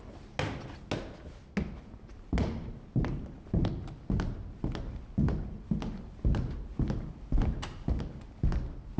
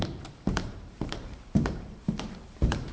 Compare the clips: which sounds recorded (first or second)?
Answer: first